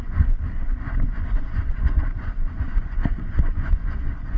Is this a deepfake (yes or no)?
yes